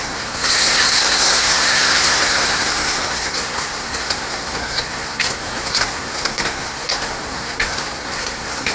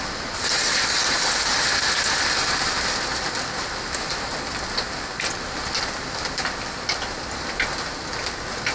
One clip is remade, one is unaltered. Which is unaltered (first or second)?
second